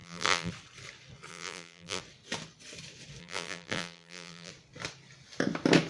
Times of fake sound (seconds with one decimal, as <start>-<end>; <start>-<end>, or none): 0.0-0.5; 1.3-2.0; 3.2-4.5